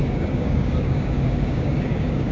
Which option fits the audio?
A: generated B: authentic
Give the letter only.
A